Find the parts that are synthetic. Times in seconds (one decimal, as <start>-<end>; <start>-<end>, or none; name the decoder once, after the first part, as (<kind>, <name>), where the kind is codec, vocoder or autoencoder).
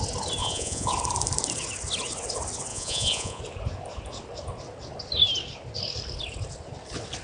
0.4-0.9 (vocoder, Vocos); 2.7-3.4